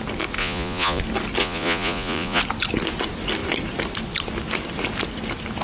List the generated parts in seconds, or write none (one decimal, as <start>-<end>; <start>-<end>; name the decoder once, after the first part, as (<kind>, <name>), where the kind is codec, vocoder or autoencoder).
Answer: 0.4-1.0 (vocoder, Vocos); 1.4-2.4